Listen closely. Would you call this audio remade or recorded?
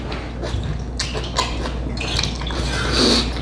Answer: recorded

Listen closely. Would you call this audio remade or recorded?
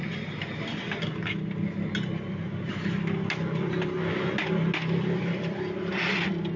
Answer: recorded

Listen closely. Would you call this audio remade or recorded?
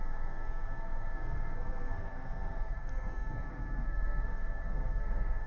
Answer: remade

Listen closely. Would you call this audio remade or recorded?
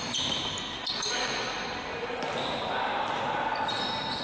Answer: recorded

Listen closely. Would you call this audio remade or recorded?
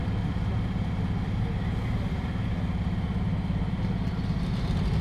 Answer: recorded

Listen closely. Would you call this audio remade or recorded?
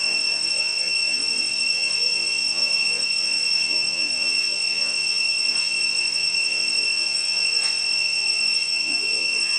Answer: remade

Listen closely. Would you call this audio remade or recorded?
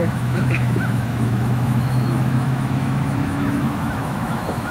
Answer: remade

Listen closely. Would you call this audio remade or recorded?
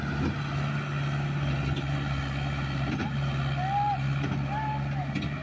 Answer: recorded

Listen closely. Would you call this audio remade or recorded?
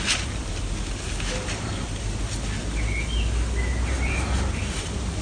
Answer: recorded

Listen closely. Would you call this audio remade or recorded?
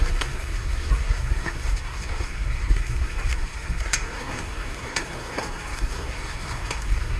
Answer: remade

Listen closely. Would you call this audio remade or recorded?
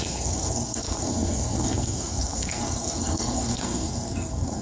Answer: remade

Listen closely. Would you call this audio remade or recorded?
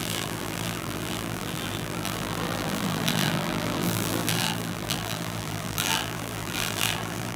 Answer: remade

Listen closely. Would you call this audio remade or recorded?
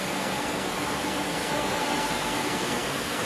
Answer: remade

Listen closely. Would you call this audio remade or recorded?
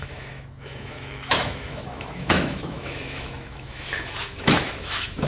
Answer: remade